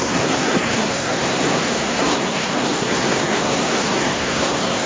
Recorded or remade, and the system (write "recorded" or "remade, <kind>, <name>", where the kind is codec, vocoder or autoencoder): remade, codec, SNAC